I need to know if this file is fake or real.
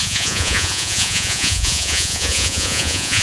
fake